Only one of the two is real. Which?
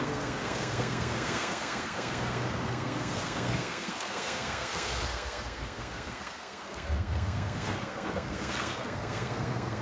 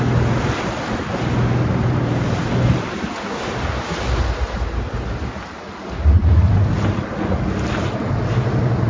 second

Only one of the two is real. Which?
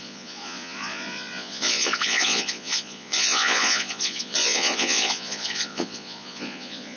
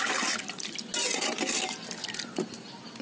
second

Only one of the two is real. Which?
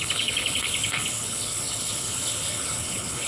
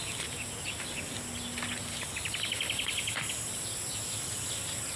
second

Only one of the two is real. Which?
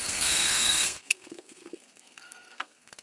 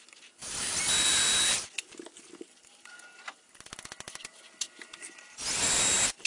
second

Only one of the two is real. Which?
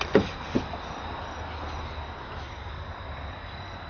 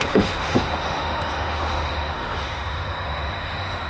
first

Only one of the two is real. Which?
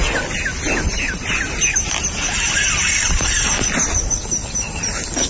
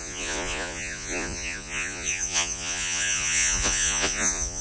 first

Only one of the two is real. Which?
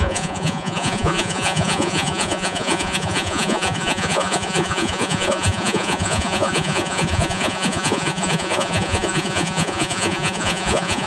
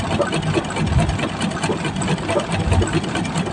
second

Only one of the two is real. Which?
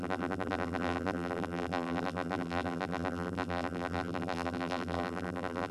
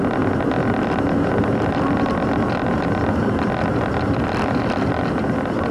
second